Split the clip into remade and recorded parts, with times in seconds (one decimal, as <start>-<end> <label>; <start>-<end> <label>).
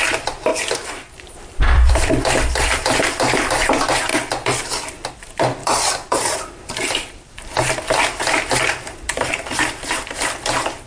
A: 0.0-0.5 remade; 0.5-1.2 recorded; 1.2-4.1 remade; 4.1-5.1 recorded; 5.1-10.9 remade